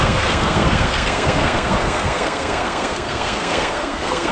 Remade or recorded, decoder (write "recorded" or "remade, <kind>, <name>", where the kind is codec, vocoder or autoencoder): remade, codec, SNAC